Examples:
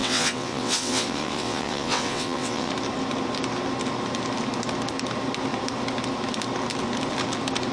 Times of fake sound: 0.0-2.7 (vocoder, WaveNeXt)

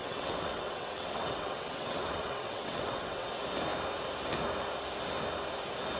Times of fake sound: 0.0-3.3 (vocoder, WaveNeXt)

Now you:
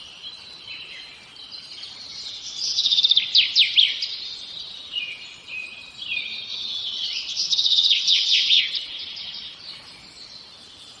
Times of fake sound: 2.1-3.0 (vocoder, WaveNeXt); 6.5-8.6

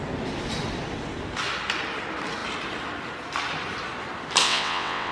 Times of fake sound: 4.4-5.1 (vocoder, WaveNeXt)